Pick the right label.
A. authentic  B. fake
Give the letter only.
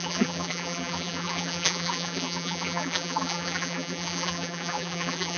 B